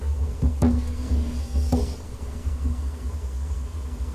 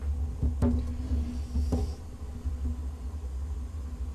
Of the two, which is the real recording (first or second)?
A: second